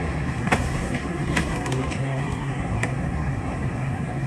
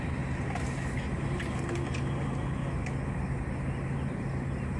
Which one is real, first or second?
second